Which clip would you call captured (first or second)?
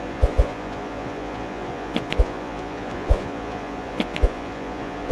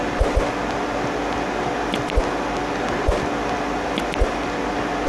second